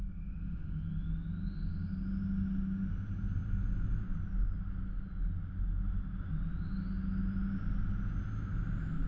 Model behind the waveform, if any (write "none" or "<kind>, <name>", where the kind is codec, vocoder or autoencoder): none